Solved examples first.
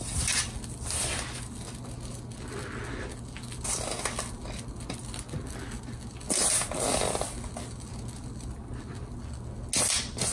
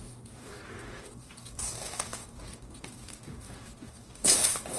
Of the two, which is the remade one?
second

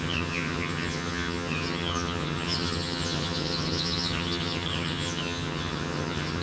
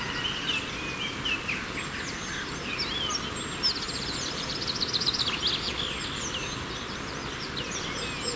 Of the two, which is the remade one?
first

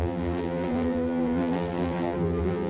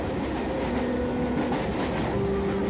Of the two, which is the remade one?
first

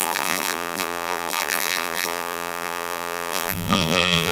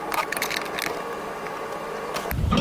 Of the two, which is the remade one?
first